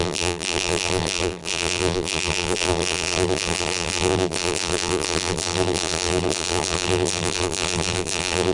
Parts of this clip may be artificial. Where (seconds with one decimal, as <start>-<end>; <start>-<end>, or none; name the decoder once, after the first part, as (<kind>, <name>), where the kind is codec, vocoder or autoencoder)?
0.0-8.5 (vocoder, BigVGAN v2)